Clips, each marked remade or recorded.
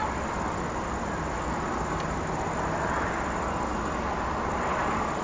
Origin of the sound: recorded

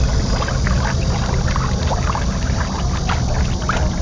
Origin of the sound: recorded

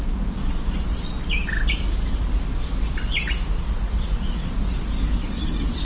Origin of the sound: recorded